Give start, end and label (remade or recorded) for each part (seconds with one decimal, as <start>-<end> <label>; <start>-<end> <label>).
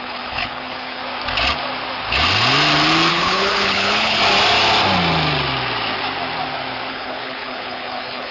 0.0-1.0 remade; 1.0-3.1 recorded; 3.1-4.2 remade; 4.2-6.9 recorded; 6.9-8.3 remade